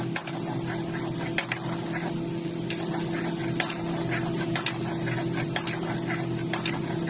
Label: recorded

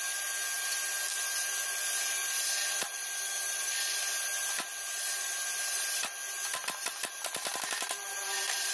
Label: remade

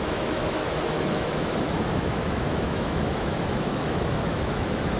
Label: remade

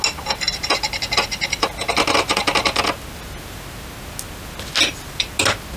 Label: recorded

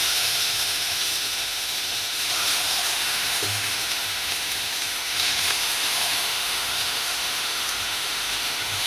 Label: remade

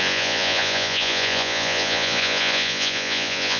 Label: remade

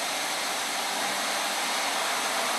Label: recorded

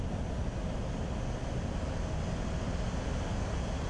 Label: recorded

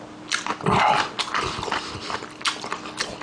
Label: recorded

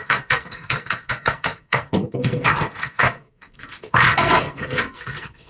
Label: remade